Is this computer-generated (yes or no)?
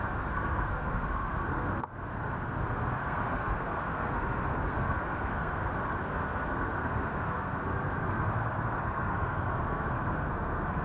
yes